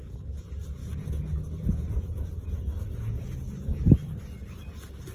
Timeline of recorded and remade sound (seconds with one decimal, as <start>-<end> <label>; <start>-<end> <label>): 0.0-0.8 recorded; 0.8-3.9 remade; 3.9-5.1 recorded